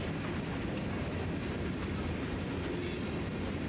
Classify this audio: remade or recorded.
recorded